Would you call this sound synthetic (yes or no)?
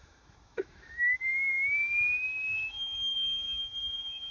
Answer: yes